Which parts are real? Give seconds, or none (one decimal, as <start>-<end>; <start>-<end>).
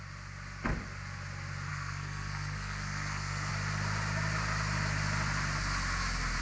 0.0-1.7; 3.5-6.4